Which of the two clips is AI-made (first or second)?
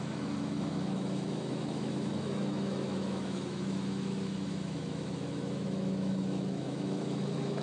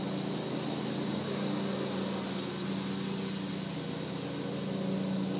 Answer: first